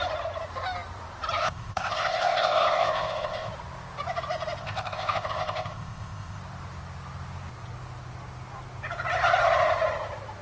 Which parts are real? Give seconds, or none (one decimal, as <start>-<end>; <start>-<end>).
0.0-1.4; 3.5-4.6; 6.4-10.4